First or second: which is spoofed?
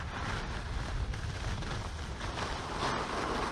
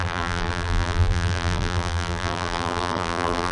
second